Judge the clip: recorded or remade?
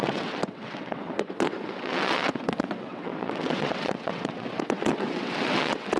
remade